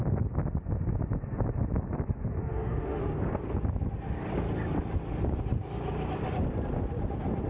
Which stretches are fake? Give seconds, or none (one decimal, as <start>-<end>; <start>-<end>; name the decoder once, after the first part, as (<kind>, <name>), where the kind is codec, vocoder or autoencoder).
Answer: 2.4-3.0 (autoencoder, DAC-VAE)

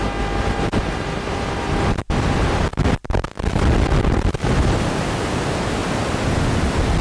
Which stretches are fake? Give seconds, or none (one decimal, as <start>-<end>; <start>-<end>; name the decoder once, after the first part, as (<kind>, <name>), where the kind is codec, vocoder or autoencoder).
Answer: 5.8-6.5 (vocoder, BigVGAN v2)

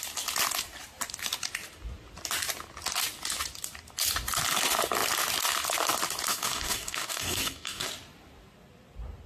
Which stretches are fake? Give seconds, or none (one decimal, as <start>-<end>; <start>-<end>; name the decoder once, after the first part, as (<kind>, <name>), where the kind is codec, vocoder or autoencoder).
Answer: 6.3-7.9 (codec, DAC)